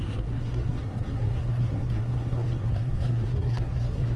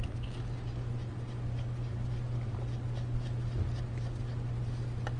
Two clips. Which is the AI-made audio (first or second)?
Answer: first